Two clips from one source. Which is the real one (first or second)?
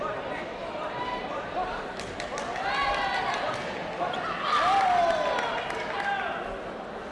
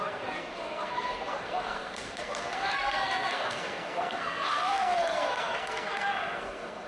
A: first